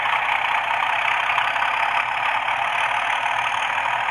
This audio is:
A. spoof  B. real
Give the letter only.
B